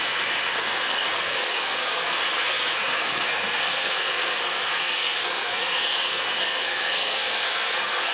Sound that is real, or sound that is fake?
fake